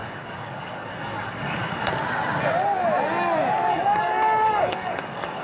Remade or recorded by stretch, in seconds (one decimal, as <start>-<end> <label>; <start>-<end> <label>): 0.0-1.9 remade; 1.9-3.7 recorded; 3.7-5.4 remade